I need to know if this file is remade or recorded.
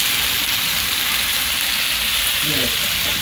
recorded